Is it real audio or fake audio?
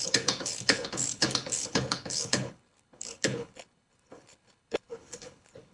fake